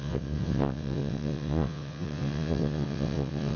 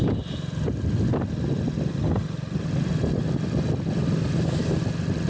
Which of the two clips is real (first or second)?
second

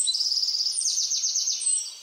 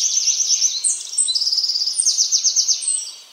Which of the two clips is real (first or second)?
second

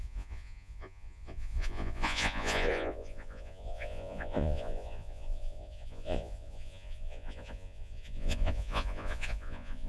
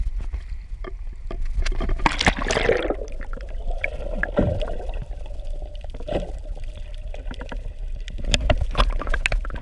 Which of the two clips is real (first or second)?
second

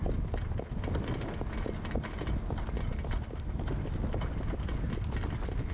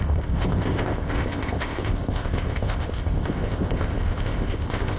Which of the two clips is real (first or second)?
first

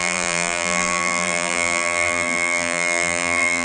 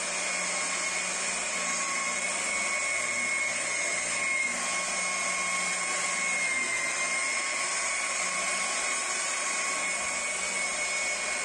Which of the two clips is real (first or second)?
second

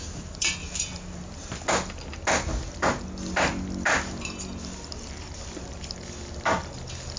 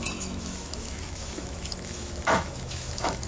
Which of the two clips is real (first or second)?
first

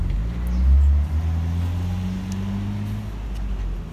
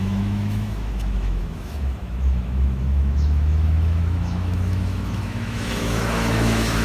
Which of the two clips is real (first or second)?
first